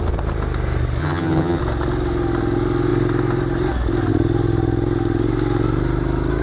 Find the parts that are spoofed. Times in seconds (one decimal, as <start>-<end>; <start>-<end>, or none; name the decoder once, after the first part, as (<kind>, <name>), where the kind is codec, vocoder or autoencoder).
1.0-1.6 (vocoder, HiFi-GAN)